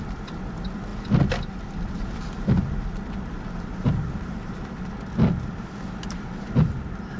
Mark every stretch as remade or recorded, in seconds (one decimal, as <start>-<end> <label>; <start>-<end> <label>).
0.0-0.9 recorded; 0.9-5.0 remade; 5.0-7.2 recorded